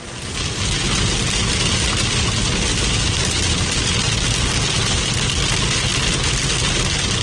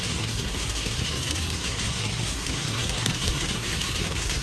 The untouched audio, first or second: first